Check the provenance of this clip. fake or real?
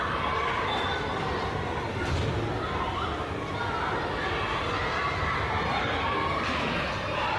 real